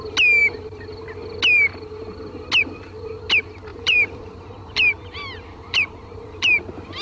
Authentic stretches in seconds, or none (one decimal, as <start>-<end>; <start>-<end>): 0.0-3.7; 6.6-7.0